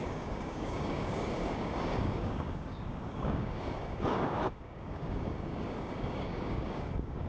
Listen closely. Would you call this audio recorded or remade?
remade